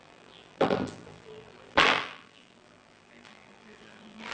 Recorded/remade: remade